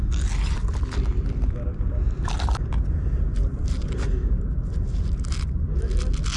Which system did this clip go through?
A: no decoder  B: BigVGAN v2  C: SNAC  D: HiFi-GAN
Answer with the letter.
A